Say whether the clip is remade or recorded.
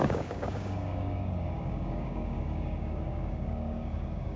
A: remade